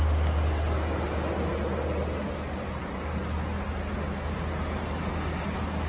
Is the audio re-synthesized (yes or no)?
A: no